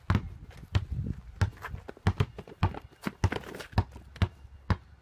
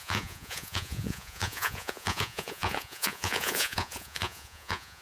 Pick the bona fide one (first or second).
first